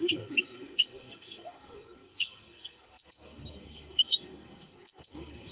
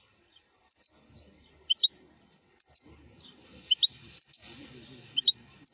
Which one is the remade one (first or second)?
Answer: first